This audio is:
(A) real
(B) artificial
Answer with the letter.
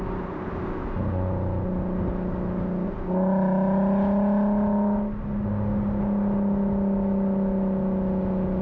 A